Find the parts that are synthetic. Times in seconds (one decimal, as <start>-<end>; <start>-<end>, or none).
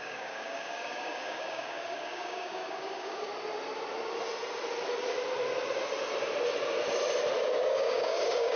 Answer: 0.0-3.3; 7.5-8.6